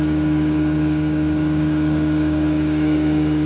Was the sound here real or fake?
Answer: fake